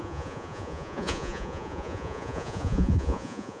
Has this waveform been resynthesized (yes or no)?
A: yes